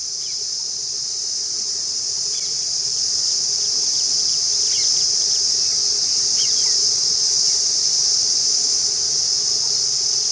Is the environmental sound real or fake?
real